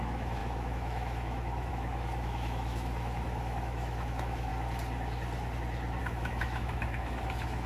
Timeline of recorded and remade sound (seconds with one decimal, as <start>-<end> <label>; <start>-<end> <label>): 0.0-4.5 remade; 4.5-6.0 recorded; 6.0-7.7 remade